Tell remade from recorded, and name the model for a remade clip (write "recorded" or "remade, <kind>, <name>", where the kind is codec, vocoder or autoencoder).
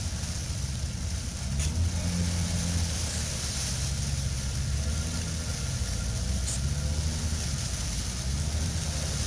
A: recorded